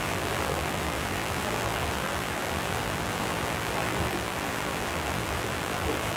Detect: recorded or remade remade